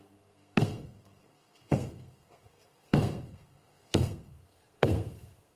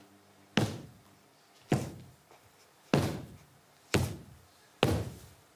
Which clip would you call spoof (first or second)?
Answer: first